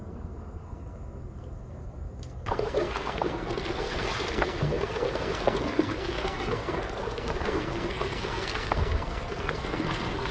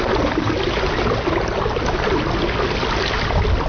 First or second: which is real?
second